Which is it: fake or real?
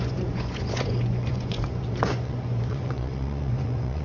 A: fake